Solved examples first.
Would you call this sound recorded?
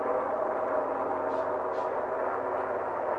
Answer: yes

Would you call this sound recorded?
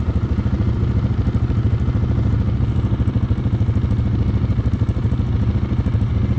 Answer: yes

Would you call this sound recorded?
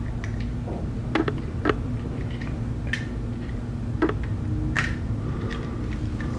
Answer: yes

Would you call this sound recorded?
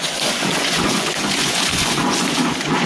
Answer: no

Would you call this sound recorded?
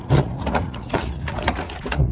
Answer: no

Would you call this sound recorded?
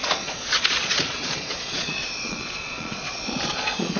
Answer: no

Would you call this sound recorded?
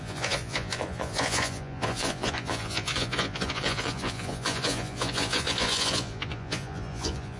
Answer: no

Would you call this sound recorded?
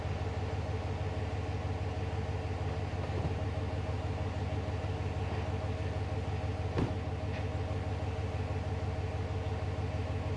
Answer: yes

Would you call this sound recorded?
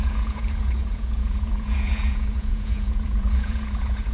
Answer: no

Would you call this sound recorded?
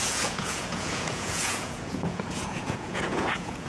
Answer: no